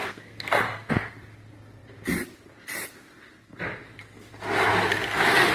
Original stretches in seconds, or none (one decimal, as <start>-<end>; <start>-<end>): 0.9-5.5